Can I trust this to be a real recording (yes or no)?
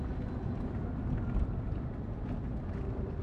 yes